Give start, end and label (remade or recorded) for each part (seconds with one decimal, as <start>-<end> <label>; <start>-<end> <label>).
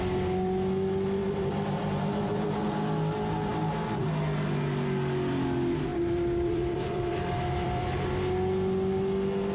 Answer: 0.0-1.2 recorded; 1.2-2.5 remade; 2.5-5.9 recorded; 5.9-7.8 remade; 7.8-9.5 recorded